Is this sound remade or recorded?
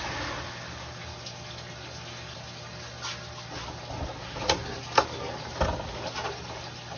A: recorded